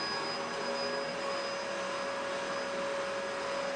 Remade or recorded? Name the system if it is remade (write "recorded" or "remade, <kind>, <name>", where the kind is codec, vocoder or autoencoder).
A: recorded